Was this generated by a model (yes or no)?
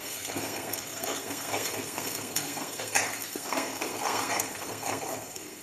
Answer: yes